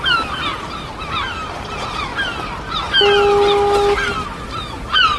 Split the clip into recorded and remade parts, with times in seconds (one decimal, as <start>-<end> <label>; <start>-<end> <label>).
0.0-0.5 recorded; 0.5-1.0 remade; 1.0-2.1 recorded; 2.1-2.8 remade; 2.8-5.2 recorded